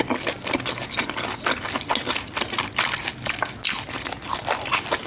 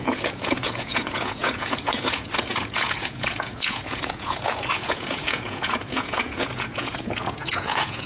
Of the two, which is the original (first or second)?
first